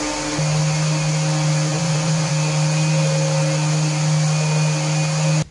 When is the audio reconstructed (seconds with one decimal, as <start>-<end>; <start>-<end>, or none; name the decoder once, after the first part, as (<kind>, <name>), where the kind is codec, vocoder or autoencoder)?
1.7-2.3 (vocoder, Vocos)